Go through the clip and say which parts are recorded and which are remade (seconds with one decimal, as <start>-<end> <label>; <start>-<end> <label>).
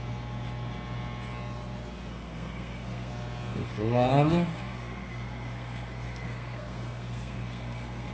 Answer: 0.0-2.1 recorded; 2.1-3.1 remade; 3.1-3.5 recorded; 3.5-8.1 remade